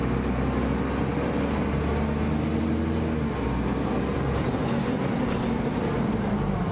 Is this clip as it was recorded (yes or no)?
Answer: yes